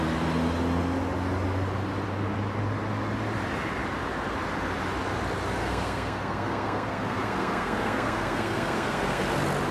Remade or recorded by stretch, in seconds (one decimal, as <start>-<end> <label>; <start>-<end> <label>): 0.0-5.6 recorded; 5.6-9.2 remade; 9.2-9.7 recorded